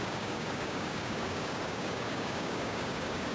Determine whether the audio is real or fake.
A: fake